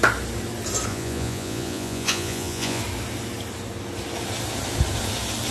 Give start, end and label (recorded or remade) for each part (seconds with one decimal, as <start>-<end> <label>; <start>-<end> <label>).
0.0-0.9 recorded; 0.9-2.8 remade; 2.8-5.5 recorded